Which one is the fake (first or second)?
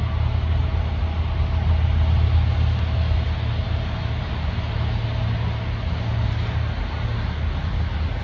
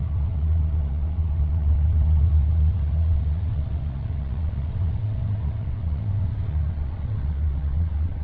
second